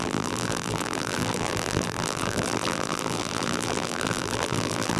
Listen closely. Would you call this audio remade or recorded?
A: remade